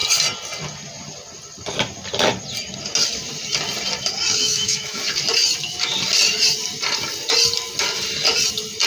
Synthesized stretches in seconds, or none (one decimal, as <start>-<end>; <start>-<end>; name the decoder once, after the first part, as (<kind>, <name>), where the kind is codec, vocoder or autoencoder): 4.4-5.0 (autoencoder, DAC-VAE)